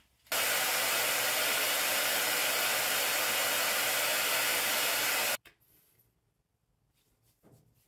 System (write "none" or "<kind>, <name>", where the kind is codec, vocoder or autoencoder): none